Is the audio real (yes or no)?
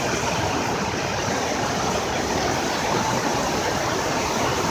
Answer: yes